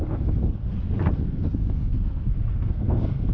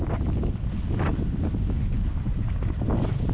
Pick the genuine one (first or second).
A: second